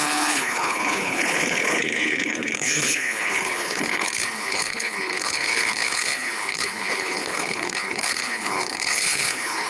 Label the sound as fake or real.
fake